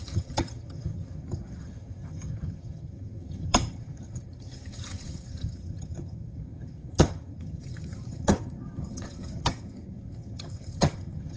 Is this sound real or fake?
fake